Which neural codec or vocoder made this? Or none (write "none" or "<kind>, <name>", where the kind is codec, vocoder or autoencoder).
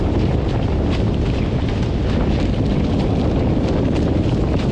none